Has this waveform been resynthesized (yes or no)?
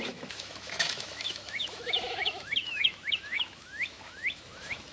yes